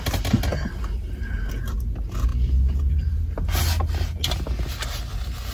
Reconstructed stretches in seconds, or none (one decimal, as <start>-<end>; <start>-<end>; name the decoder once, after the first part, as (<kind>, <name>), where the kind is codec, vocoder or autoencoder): none